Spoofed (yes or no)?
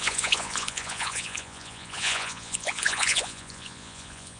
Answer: yes